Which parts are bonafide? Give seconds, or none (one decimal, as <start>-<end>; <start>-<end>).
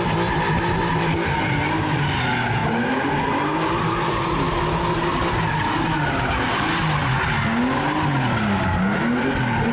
0.0-9.7